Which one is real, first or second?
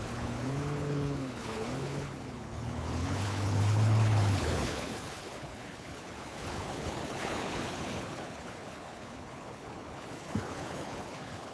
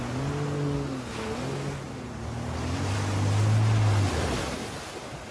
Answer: second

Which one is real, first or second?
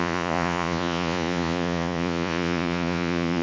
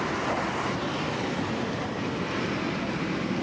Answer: second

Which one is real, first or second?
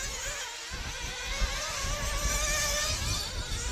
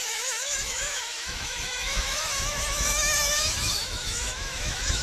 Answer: first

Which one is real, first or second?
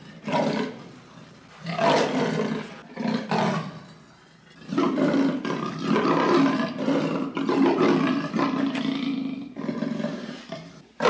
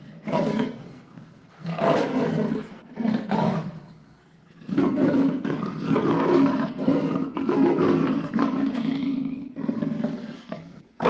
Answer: first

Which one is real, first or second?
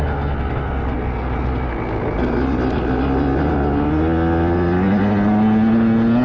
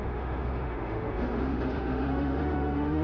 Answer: first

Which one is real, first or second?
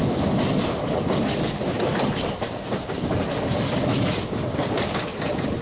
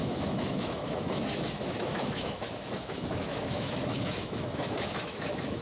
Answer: first